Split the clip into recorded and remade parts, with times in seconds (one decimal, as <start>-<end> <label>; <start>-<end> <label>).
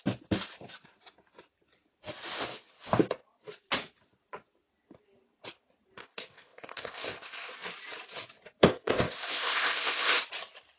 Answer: 0.0-6.0 recorded; 6.0-7.5 remade; 7.5-8.6 recorded; 8.6-10.2 remade; 10.2-10.8 recorded